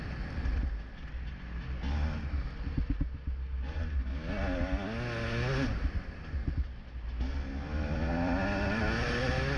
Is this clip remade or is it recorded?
recorded